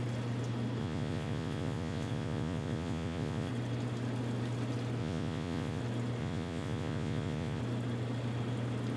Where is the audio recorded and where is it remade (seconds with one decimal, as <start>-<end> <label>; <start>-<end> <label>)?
0.0-0.8 recorded; 0.8-3.5 remade; 3.5-5.0 recorded; 5.0-5.8 remade; 5.8-6.2 recorded; 6.2-7.6 remade; 7.6-9.0 recorded